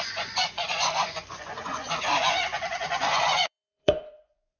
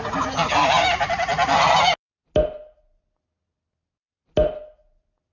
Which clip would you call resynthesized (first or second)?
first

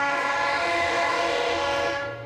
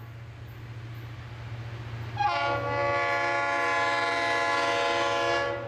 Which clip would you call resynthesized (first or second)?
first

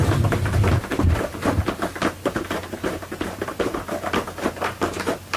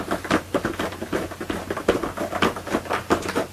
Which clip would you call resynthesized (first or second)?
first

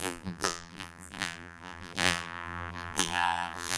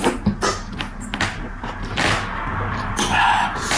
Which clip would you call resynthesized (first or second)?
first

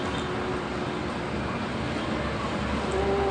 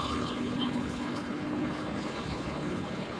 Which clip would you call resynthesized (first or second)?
second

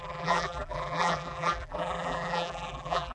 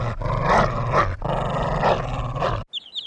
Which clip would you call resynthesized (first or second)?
first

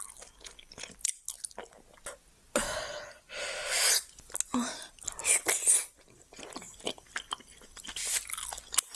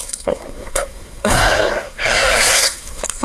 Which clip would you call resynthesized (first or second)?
second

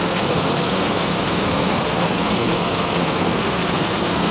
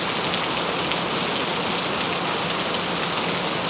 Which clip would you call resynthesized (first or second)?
first